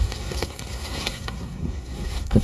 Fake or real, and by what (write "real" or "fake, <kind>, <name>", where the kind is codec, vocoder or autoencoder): fake, codec, SNAC